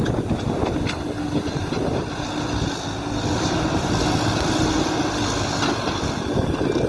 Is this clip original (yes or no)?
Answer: yes